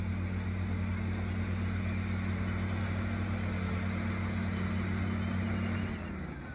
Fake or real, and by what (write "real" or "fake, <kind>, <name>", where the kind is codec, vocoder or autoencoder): real